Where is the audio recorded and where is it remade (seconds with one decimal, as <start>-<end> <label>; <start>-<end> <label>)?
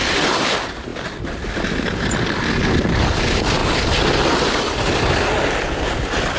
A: 0.0-6.4 recorded